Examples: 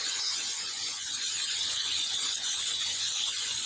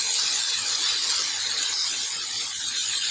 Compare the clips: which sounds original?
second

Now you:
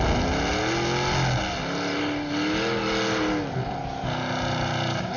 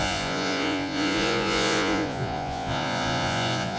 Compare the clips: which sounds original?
first